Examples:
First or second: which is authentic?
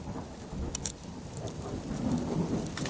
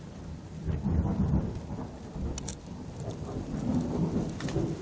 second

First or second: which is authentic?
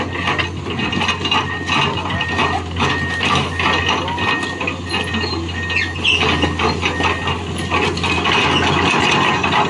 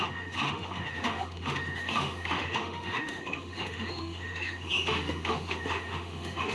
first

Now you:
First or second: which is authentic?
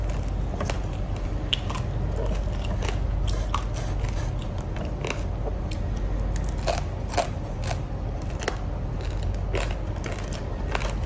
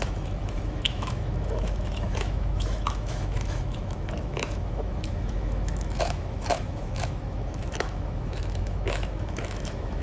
first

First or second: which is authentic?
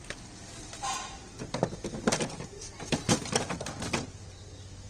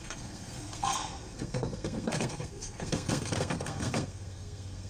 first